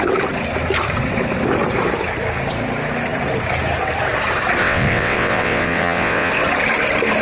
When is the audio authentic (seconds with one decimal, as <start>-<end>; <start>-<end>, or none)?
0.0-4.6; 6.3-7.2